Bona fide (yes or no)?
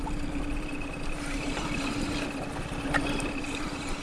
yes